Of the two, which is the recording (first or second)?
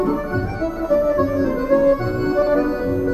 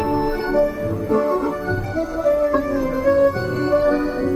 first